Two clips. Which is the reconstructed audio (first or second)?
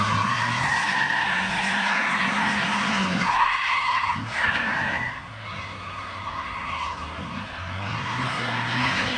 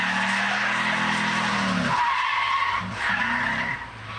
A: first